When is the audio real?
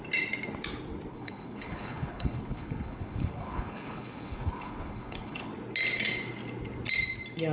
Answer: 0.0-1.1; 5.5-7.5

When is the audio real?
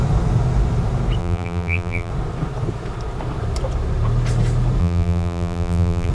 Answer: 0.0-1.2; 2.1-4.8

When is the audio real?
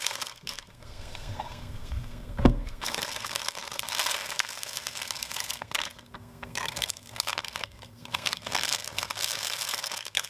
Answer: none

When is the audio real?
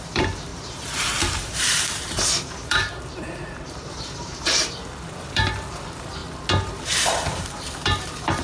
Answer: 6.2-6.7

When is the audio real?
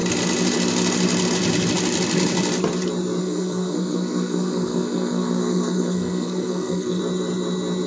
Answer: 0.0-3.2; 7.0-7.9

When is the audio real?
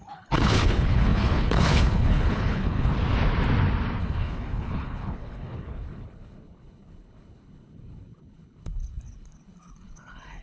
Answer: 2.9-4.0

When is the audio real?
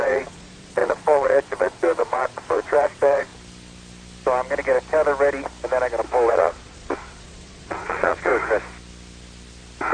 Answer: 3.3-6.3; 8.3-9.9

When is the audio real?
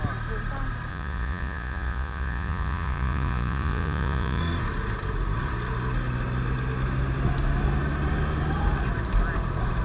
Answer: 0.0-0.9; 4.4-9.8